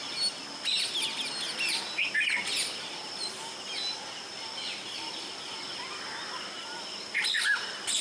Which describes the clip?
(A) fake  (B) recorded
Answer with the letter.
B